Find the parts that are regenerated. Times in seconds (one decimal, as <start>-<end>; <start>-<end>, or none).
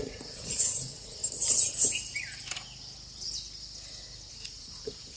0.0-1.2; 4.3-5.2